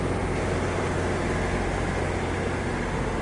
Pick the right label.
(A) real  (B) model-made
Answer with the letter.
A